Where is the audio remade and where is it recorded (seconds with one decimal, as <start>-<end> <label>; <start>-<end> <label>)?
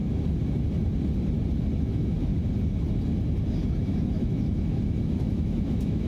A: 0.0-1.9 recorded; 1.9-2.3 remade; 2.3-3.5 recorded; 3.5-6.1 remade